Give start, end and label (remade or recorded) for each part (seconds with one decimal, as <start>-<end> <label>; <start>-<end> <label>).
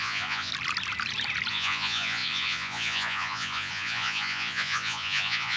0.0-0.5 remade; 0.5-1.5 recorded; 1.5-5.6 remade